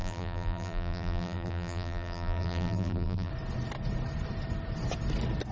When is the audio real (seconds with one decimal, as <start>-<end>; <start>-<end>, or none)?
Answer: 3.3-5.5